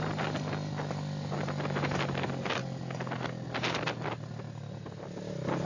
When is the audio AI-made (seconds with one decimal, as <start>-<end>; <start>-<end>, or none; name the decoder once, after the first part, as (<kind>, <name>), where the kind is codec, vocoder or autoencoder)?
none